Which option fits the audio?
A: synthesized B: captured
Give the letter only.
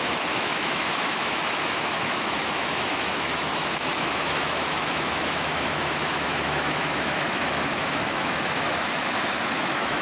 A